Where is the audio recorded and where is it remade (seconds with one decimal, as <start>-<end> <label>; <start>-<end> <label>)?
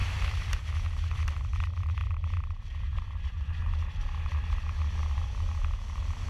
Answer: 0.0-0.5 remade; 0.5-2.0 recorded; 2.0-5.8 remade; 5.8-6.3 recorded